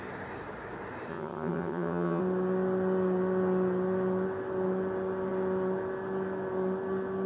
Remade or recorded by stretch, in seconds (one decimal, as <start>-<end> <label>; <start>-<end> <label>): 0.0-1.1 recorded; 1.1-2.2 remade; 2.2-7.3 recorded